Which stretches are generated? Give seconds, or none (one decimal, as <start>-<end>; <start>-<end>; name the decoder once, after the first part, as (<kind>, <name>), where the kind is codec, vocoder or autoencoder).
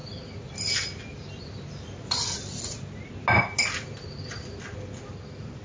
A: none